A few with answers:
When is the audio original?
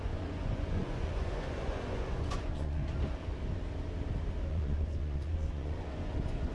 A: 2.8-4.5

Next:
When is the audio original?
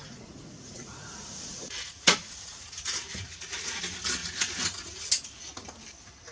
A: 3.8-4.2; 5.1-6.3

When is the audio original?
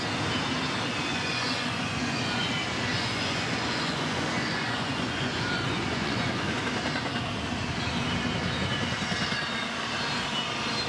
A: 0.0-1.1; 2.5-2.9; 6.6-10.9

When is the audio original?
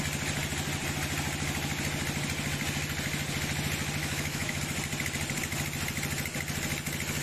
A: 0.0-4.0; 4.6-7.2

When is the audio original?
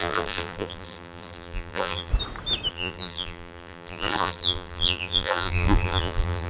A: 2.1-2.7